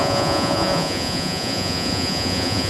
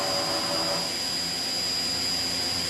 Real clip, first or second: second